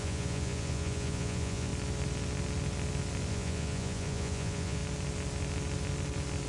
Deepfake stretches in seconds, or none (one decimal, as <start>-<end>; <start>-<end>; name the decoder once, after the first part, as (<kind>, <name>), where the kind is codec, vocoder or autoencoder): 0.0-1.7 (vocoder, Vocos); 3.3-4.8